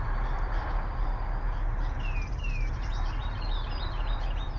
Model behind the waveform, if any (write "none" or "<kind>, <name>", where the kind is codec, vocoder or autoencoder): none